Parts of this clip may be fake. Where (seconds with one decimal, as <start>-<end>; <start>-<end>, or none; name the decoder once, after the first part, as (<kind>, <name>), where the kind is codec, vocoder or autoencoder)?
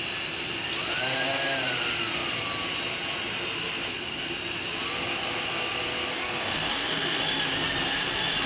6.1-7.2 (codec, DAC)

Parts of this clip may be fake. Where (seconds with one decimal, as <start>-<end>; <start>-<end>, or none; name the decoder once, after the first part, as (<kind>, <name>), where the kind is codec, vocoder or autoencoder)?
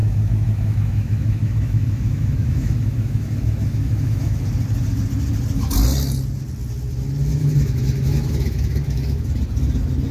0.0-4.4 (autoencoder, DAC-VAE); 7.3-9.3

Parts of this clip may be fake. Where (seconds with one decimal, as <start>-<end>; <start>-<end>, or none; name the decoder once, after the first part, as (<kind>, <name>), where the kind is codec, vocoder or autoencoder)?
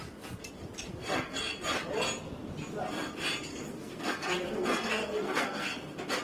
0.9-1.5 (codec, SNAC); 3.5-5.8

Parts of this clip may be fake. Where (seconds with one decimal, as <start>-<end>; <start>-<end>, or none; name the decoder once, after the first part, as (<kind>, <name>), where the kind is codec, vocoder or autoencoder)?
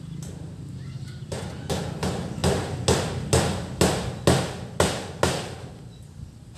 none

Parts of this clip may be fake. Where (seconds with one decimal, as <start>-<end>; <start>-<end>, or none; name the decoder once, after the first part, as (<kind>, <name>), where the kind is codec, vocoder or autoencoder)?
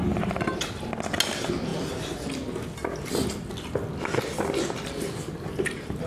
none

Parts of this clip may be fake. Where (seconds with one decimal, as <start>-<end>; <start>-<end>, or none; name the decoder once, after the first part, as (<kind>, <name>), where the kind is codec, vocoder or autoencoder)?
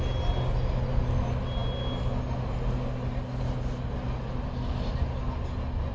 none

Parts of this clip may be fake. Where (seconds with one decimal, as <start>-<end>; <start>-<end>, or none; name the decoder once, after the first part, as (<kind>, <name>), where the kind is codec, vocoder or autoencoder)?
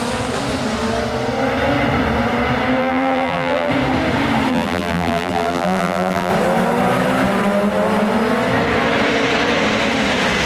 2.8-3.7 (vocoder, BigVGAN v2); 4.5-6.3